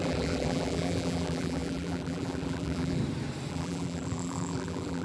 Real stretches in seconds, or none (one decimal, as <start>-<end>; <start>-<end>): 3.0-3.5